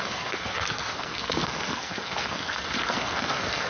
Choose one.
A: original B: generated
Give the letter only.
B